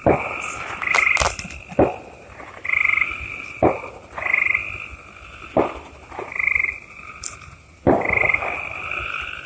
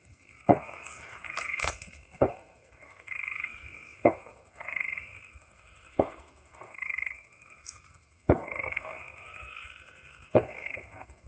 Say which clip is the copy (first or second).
second